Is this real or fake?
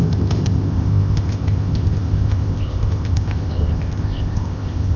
fake